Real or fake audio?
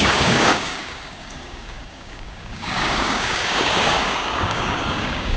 fake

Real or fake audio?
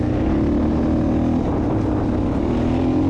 real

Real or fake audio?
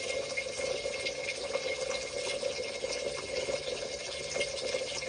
real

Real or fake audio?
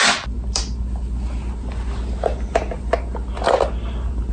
real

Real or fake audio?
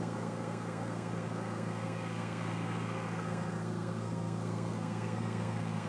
fake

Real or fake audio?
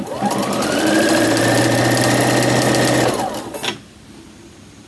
real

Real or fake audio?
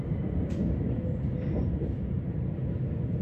fake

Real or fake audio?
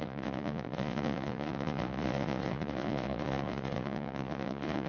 fake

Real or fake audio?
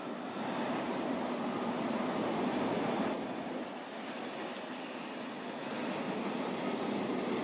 real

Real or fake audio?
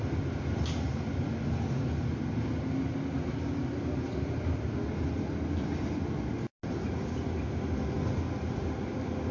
real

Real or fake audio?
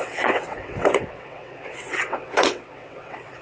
fake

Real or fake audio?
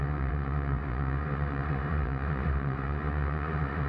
fake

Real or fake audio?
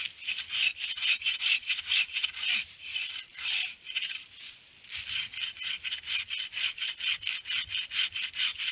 real